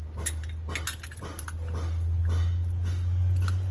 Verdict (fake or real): real